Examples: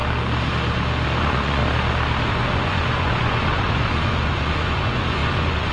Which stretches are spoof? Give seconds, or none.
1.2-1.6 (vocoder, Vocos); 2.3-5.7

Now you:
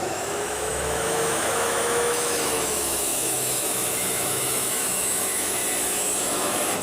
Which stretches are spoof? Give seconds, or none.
0.0-5.6 (autoencoder, DAC-VAE); 6.2-6.8

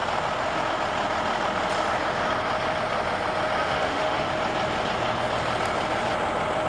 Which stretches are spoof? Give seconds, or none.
3.6-4.3 (autoencoder, DAC-VAE)